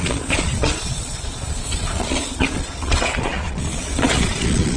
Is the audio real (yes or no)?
no